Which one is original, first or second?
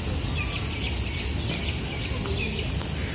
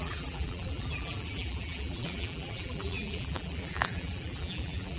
first